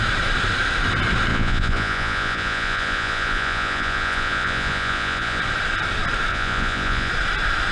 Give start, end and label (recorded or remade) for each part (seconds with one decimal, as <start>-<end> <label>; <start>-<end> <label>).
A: 0.0-1.3 recorded; 1.3-5.4 remade; 5.4-6.3 recorded; 6.3-7.1 remade; 7.1-7.7 recorded